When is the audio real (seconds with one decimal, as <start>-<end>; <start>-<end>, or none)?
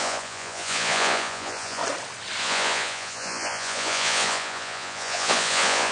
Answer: 1.8-2.4